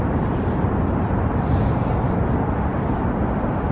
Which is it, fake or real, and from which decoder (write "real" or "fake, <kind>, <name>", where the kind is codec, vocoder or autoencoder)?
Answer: real